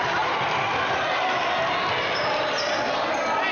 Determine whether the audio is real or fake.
real